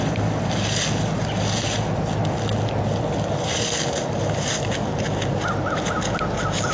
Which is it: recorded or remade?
recorded